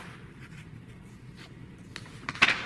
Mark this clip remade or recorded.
remade